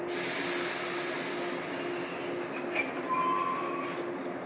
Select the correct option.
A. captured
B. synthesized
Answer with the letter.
A